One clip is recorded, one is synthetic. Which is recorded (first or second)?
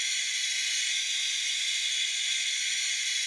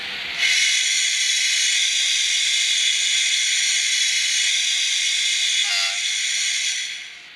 second